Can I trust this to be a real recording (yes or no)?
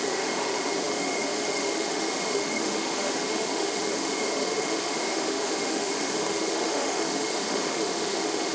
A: no